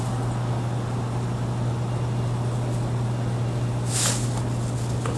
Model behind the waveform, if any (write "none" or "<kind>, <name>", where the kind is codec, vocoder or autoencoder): none